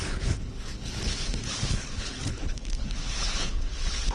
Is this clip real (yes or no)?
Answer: no